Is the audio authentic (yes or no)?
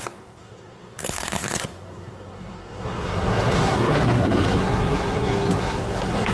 no